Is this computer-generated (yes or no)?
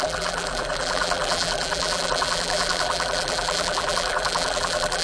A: yes